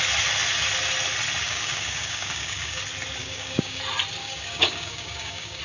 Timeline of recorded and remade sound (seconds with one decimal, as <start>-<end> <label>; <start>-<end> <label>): 0.0-1.4 recorded; 1.4-2.8 remade; 2.8-3.2 recorded; 3.2-3.8 remade; 3.8-4.2 recorded; 4.2-5.6 remade

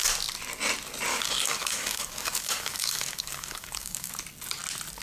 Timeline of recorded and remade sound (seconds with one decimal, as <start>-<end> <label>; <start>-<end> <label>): 0.0-1.1 recorded; 1.1-4.1 remade; 4.1-5.0 recorded

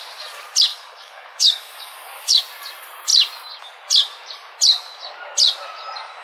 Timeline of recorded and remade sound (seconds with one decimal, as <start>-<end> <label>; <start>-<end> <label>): 0.0-0.7 recorded; 0.7-2.4 remade; 2.4-6.2 recorded

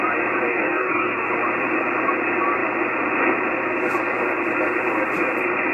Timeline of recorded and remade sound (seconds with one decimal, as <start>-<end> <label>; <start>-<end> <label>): 0.0-0.5 recorded; 0.5-1.3 remade; 1.3-5.7 recorded

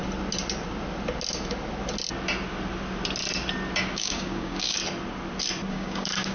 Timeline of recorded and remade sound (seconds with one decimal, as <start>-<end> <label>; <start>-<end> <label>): 0.0-3.8 recorded; 3.8-4.8 remade; 4.8-5.7 recorded; 5.7-6.3 remade

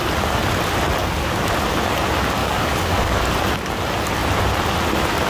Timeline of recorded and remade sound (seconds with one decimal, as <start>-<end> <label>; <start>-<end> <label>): 0.0-1.0 recorded; 1.0-1.5 remade; 1.5-2.4 recorded; 2.4-3.2 remade; 3.2-5.3 recorded

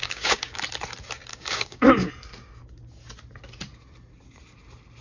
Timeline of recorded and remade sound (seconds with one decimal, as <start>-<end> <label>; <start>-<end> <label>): 0.0-0.6 remade; 0.6-1.3 recorded; 1.3-2.1 remade; 2.1-5.0 recorded